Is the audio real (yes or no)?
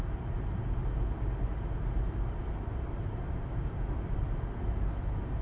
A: yes